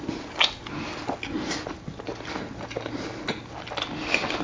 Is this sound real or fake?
real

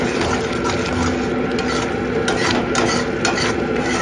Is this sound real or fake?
real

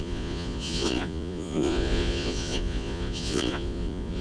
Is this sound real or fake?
fake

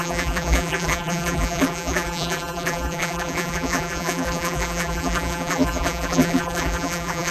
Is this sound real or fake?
fake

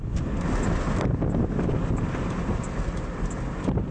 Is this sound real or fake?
real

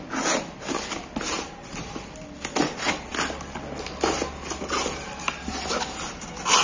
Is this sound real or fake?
real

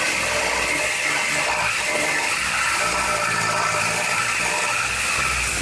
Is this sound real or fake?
real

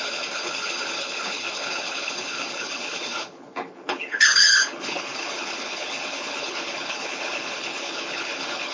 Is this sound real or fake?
fake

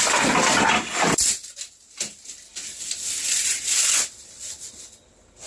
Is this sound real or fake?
real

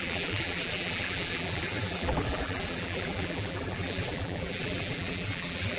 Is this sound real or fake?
fake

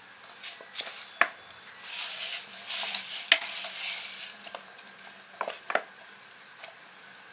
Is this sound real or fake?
real